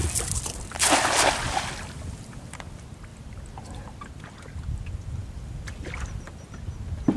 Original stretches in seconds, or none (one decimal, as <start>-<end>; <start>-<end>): 0.0-3.1; 4.1-7.2